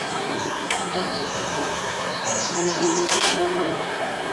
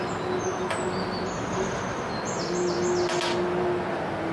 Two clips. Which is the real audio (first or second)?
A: second